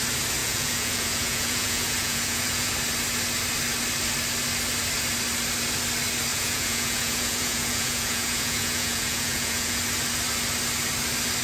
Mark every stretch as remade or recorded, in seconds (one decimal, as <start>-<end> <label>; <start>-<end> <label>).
0.0-0.4 recorded; 0.4-2.7 remade; 2.7-6.3 recorded; 6.3-9.8 remade; 9.8-11.4 recorded